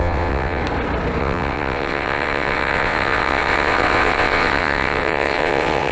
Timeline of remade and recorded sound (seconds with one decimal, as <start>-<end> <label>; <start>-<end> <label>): 0.0-0.6 remade; 0.6-1.2 recorded; 1.2-5.9 remade